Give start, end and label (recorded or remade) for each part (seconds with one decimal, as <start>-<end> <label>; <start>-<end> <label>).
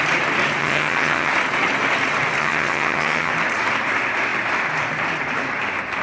0.0-0.6 recorded; 0.6-1.3 remade; 1.3-2.4 recorded; 2.4-3.3 remade; 3.3-6.0 recorded